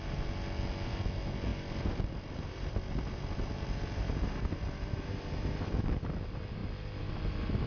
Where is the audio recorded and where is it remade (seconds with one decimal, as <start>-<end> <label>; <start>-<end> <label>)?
0.0-1.5 recorded; 1.5-6.1 remade; 6.1-6.6 recorded; 6.6-7.1 remade; 7.1-7.7 recorded